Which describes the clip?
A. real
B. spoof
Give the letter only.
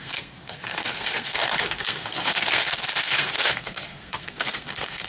B